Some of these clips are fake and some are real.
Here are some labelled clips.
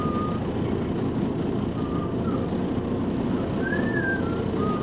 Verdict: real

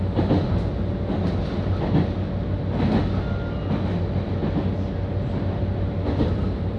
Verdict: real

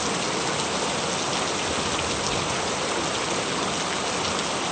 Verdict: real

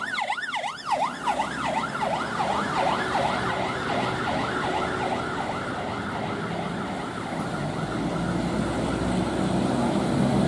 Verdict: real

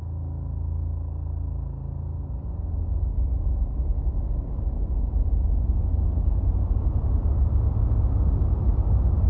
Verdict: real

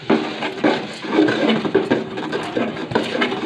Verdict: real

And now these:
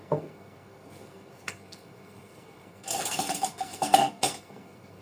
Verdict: fake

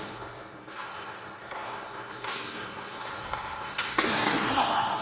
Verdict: fake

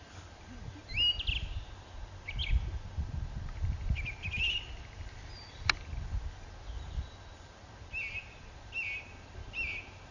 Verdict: real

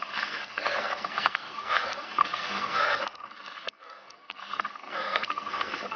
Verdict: fake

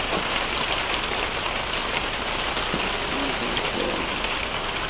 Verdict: real